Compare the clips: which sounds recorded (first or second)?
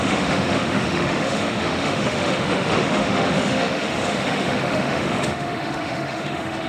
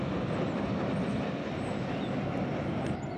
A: second